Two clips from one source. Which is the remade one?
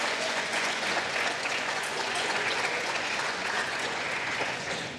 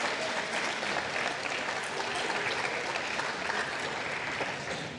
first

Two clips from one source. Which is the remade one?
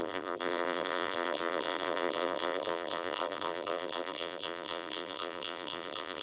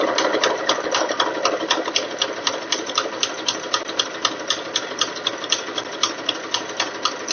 first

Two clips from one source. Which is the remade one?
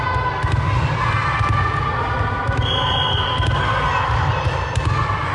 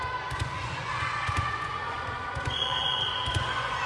second